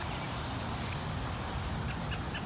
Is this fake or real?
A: real